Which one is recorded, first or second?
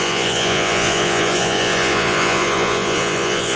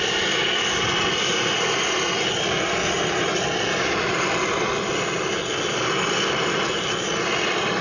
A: second